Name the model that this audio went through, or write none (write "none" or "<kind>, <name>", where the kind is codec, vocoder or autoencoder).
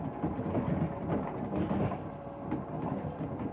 none